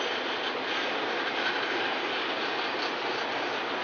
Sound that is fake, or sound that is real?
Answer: real